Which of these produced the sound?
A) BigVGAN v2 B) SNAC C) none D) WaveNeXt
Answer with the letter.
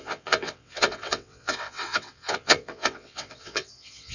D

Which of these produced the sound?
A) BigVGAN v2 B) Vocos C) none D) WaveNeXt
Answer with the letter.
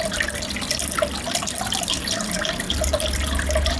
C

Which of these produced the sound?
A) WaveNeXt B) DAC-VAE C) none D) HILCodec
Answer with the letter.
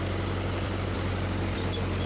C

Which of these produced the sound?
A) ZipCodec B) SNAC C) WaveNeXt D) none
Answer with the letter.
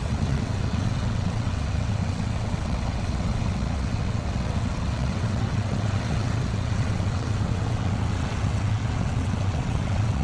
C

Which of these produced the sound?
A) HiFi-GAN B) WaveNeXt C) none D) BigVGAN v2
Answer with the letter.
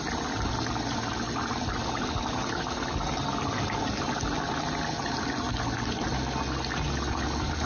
C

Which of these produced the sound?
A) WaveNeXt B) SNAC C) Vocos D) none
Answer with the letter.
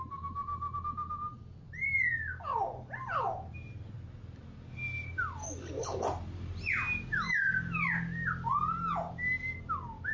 D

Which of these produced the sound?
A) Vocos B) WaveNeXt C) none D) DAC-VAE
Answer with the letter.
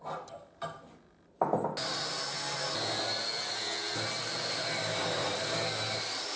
C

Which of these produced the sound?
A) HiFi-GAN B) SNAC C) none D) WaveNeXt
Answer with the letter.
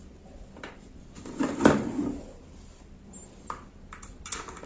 C